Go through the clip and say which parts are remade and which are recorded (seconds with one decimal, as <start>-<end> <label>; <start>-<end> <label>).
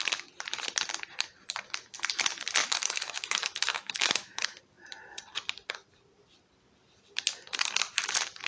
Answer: 0.0-2.6 recorded; 2.6-4.6 remade; 4.6-8.5 recorded